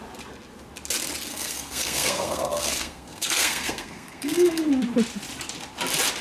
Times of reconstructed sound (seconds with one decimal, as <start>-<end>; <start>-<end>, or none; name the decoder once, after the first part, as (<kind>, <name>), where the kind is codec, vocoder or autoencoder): 1.3-4.7 (codec, SNAC)